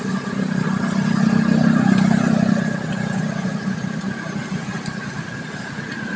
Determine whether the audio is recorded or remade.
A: recorded